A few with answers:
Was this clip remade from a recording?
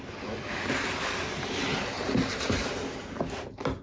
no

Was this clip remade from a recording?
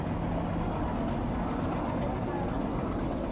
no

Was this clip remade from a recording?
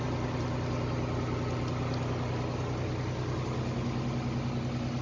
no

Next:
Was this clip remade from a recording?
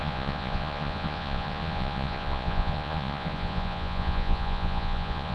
yes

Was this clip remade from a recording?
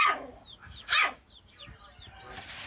no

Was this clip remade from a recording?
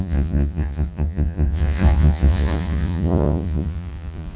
yes